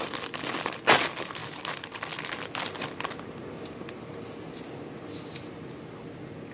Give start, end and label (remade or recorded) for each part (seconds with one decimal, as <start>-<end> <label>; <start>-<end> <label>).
0.0-6.5 recorded